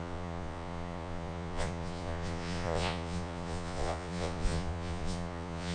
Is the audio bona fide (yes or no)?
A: no